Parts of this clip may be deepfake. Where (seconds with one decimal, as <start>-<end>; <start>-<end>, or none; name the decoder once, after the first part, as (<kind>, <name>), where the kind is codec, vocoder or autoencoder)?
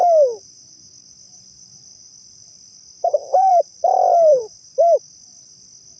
1.9-4.4 (vocoder, BigVGAN v2)